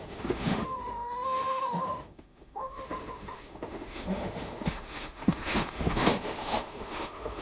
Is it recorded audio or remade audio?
remade